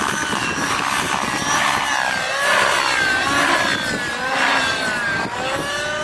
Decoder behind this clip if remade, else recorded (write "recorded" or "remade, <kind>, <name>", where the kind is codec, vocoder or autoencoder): recorded